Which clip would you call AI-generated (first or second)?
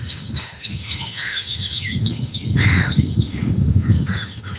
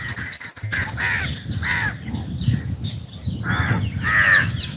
first